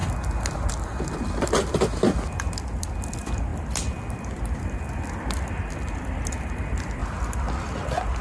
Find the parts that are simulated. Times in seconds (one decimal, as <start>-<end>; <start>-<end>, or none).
none